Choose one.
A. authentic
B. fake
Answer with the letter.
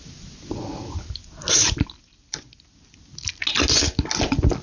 A